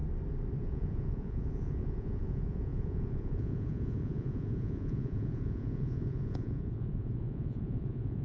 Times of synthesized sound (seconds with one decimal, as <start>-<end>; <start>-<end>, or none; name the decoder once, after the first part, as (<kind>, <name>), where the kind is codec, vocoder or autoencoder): 0.6-8.2 (vocoder, Vocos)